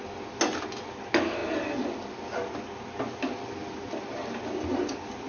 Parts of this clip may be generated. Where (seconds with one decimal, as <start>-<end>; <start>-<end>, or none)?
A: none